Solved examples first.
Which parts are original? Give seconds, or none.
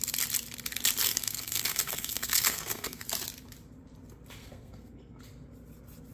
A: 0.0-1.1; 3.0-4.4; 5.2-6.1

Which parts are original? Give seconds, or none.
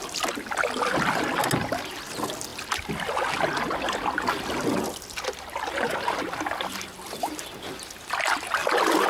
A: 0.0-9.1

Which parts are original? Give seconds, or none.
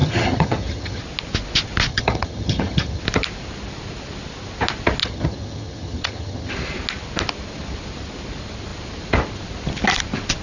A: 1.0-1.9; 3.0-5.0; 6.5-10.4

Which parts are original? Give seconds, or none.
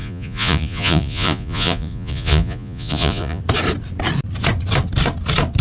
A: 3.4-5.6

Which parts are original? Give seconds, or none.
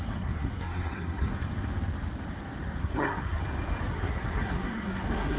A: 1.3-2.8; 3.4-3.9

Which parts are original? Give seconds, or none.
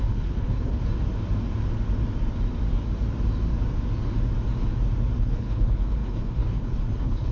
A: 0.8-5.2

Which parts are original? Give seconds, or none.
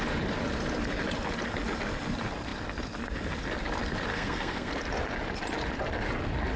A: 0.0-4.1; 4.7-6.6